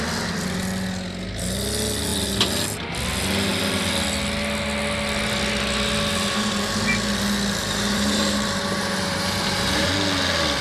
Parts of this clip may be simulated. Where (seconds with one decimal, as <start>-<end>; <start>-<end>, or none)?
7.6-9.9